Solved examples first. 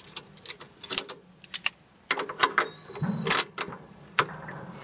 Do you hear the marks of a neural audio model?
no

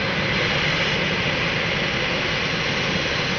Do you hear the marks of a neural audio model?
no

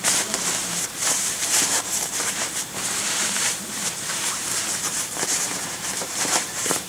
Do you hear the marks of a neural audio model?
yes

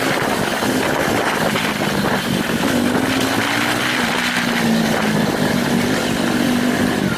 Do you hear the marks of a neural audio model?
no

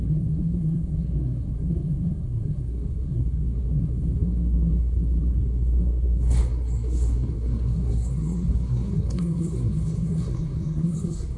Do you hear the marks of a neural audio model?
yes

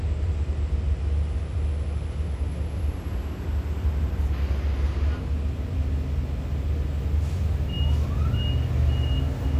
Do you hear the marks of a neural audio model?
no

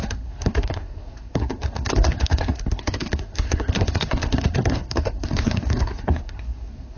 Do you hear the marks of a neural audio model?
yes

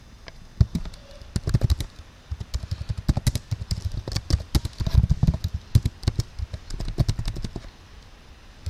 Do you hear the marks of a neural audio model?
no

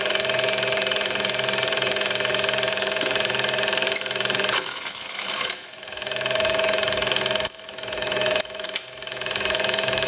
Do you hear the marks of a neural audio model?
yes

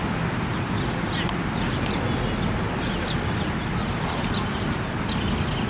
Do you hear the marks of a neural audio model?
no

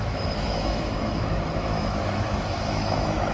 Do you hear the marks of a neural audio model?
yes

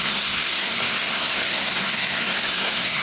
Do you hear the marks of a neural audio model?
yes